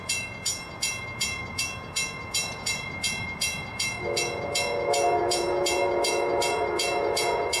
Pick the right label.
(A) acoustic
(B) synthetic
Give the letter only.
B